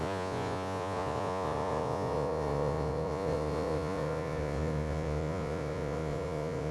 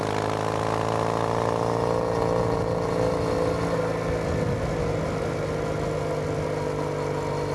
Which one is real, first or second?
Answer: second